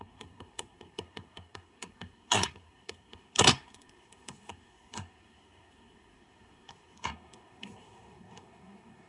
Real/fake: fake